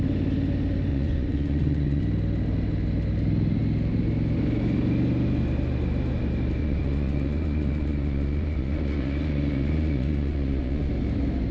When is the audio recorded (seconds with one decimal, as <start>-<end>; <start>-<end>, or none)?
0.0-0.9; 2.0-6.6; 10.9-11.5